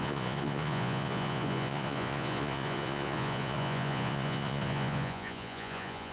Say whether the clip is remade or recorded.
remade